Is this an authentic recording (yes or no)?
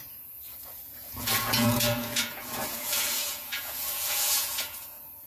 no